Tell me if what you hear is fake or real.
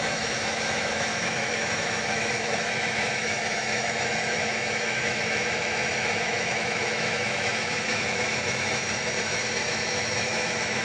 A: fake